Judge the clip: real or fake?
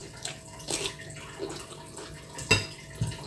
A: real